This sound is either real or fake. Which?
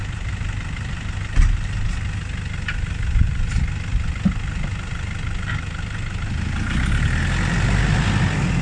real